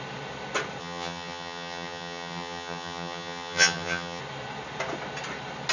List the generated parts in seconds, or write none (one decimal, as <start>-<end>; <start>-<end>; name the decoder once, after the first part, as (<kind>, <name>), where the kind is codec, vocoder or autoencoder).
0.8-4.2 (vocoder, HiFi-GAN)